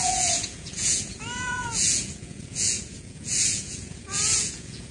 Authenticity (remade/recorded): remade